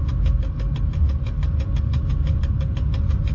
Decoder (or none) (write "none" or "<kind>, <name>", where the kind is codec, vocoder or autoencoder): none